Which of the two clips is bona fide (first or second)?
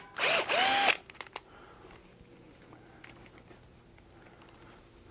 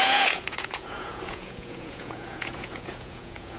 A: first